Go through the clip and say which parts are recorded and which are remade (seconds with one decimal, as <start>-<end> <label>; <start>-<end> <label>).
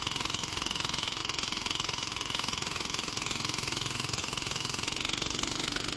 0.0-6.0 remade